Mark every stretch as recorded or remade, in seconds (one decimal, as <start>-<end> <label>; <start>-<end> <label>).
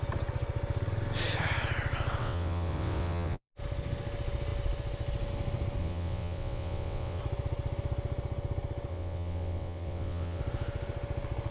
0.0-2.2 recorded; 2.2-3.5 remade; 3.5-5.8 recorded; 5.8-7.2 remade; 7.2-8.9 recorded; 8.9-10.4 remade; 10.4-11.5 recorded